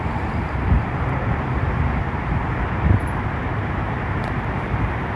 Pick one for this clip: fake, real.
fake